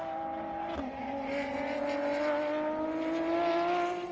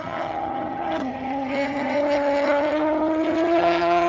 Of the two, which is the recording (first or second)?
first